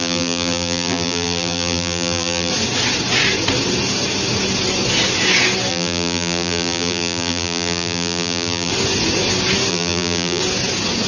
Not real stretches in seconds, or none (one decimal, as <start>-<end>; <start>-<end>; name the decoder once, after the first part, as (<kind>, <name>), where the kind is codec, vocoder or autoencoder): 0.0-2.5 (vocoder, BigVGAN v2); 5.7-8.7; 9.7-10.4